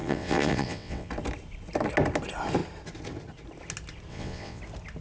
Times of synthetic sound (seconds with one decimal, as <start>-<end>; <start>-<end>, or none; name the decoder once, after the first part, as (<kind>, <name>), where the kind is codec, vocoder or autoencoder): 0.0-1.1 (vocoder, WaveNeXt); 4.1-4.6